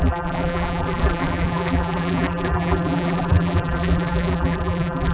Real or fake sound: fake